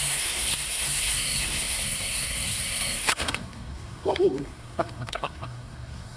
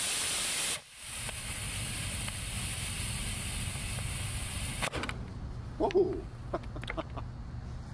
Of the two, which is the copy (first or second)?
first